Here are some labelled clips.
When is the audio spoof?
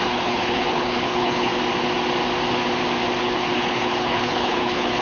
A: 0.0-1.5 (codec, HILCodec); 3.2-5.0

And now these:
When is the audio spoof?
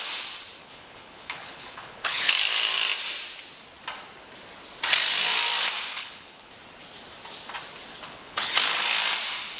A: 0.6-2.3 (codec, HILCodec); 5.9-6.5; 7.9-8.5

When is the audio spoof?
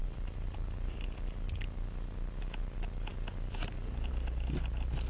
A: none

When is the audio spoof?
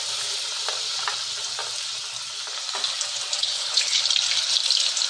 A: 3.4-4.0 (codec, HILCodec)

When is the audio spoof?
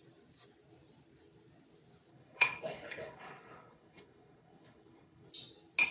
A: 2.1-5.3 (codec, HILCodec)